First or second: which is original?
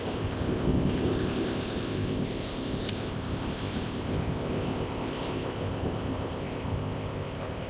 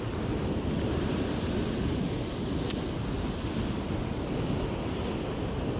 second